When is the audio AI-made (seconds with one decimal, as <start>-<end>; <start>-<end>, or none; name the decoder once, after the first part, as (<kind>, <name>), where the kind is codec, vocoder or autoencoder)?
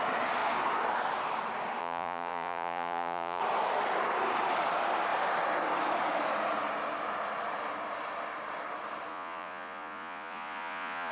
1.8-3.4 (vocoder, Vocos); 9.1-11.1